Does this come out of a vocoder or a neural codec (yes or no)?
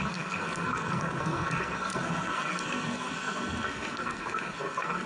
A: yes